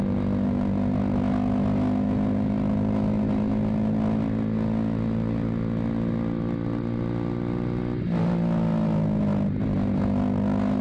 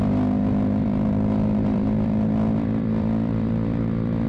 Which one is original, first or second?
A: first